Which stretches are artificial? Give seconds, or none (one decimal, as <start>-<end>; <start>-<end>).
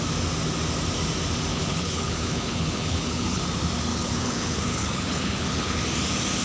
1.5-3.4; 3.9-5.8